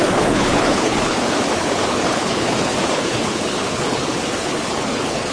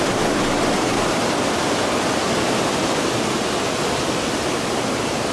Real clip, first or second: second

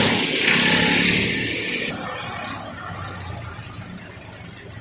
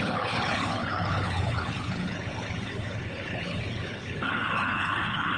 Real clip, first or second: first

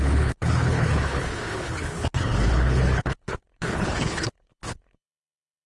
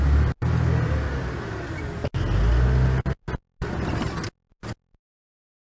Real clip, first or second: second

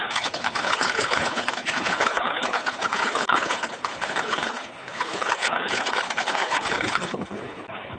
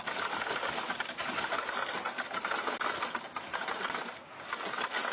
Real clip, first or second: second